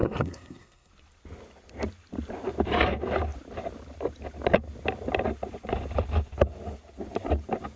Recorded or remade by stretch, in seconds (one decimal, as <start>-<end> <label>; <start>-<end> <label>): 0.0-0.9 remade; 0.9-7.8 recorded